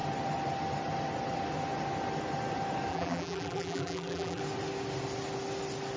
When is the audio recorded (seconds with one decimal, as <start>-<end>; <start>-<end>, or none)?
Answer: 0.0-2.9; 4.4-6.0